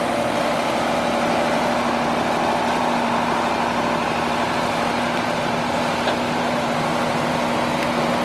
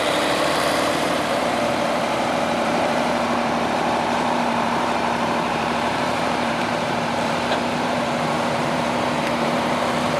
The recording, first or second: first